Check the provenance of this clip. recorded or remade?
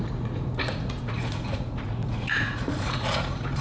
remade